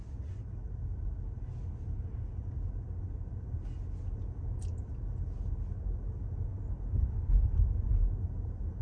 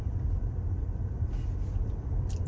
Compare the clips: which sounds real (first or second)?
first